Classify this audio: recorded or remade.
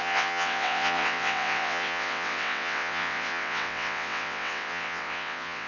remade